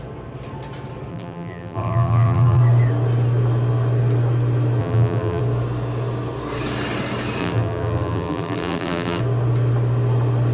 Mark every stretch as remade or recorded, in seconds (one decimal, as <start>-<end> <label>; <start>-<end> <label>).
0.0-1.1 recorded; 1.1-2.6 remade; 2.6-4.8 recorded; 4.8-5.4 remade; 5.4-7.4 recorded; 7.4-9.2 remade; 9.2-10.5 recorded